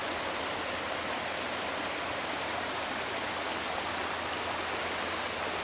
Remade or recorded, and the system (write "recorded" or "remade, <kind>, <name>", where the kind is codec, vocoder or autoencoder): recorded